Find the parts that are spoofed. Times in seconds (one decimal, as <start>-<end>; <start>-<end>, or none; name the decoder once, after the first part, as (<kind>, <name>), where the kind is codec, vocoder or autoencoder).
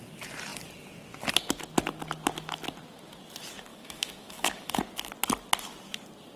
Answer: 3.7-4.8 (autoencoder, DAC-VAE)